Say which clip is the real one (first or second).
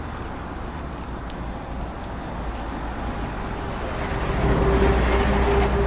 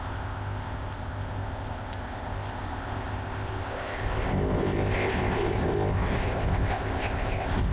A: first